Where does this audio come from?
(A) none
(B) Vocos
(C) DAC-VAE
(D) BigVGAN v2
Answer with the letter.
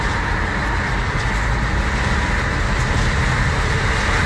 A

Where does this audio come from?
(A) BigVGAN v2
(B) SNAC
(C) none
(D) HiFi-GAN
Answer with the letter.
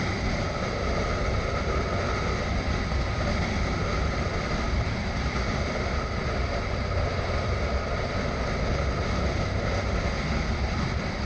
C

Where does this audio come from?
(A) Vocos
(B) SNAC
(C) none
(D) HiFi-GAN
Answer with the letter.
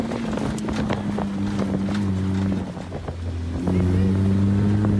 C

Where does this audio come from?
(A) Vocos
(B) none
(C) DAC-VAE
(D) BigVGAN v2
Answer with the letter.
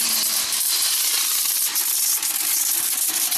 D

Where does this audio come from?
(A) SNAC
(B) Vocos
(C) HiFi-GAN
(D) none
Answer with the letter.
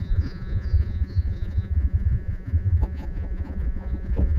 B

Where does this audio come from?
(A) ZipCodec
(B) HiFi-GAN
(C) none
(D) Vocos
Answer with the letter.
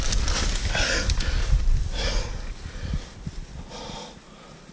C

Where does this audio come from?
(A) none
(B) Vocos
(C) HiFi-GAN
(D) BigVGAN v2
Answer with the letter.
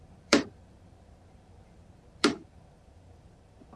D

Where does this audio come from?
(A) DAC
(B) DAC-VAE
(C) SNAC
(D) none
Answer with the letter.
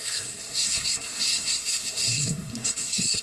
C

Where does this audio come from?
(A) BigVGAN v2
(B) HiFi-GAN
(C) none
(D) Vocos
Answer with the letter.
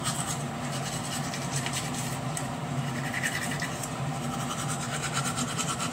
A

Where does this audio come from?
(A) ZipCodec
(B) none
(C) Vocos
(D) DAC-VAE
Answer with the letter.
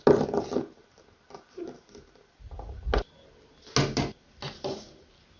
B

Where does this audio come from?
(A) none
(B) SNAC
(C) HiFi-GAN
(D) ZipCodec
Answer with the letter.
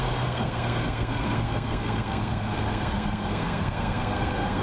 B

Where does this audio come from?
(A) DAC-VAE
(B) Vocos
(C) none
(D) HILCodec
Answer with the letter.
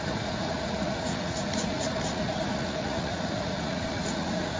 B